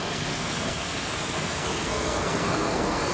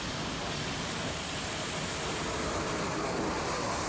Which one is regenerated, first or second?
first